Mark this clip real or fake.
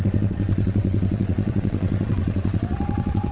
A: fake